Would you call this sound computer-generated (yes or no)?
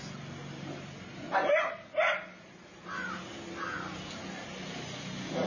no